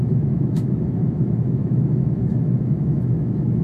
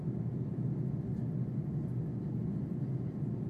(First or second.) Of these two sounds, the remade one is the first